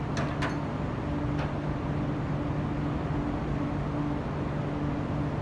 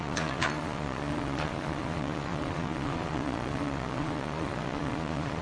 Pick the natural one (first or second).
first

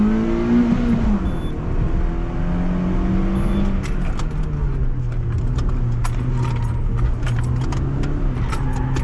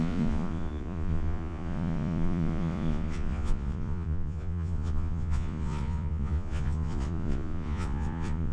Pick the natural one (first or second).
first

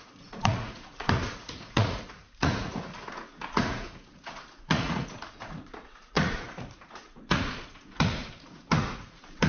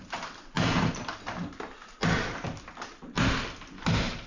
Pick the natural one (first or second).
second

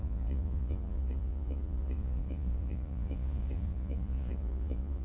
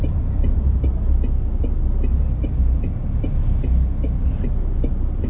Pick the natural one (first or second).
second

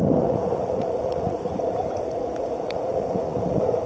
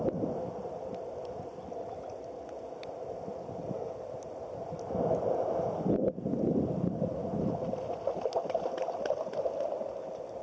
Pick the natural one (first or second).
second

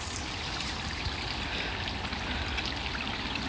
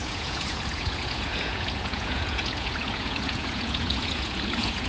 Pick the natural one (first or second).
first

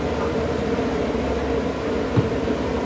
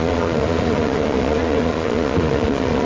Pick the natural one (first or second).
first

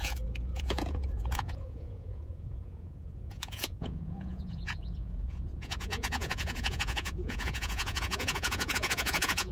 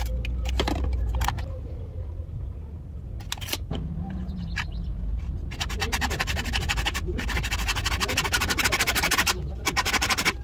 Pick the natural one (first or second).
second